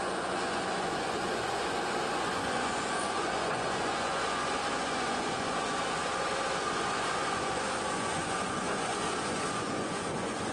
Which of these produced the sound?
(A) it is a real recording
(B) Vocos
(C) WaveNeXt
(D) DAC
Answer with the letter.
B